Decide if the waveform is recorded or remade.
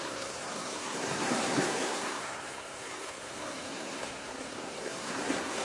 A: remade